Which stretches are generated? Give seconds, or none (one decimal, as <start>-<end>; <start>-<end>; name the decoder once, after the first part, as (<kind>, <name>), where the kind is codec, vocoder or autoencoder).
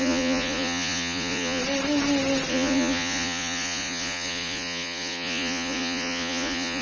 0.0-1.6 (vocoder, Vocos); 2.5-6.8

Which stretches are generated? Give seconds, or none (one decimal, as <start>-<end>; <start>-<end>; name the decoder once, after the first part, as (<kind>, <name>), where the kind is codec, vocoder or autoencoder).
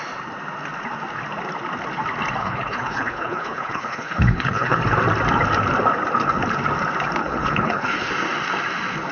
2.4-4.8 (codec, HILCodec); 7.2-8.1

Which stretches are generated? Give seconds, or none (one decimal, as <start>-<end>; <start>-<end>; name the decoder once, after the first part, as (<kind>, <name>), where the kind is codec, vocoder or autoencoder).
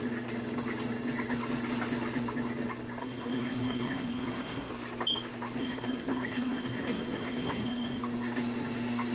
3.0-4.7 (codec, SNAC); 5.6-8.0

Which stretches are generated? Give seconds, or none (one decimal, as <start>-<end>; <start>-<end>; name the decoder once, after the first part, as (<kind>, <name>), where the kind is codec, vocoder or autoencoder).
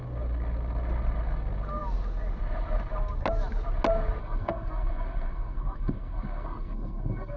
4.2-7.4 (codec, SNAC)